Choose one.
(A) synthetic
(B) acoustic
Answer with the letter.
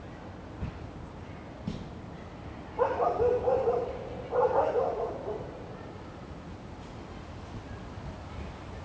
B